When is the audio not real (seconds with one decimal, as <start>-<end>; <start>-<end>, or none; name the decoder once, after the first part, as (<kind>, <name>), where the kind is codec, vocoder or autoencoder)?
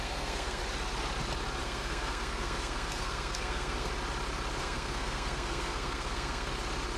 0.0-0.6 (codec, SNAC); 1.6-3.9; 4.6-6.5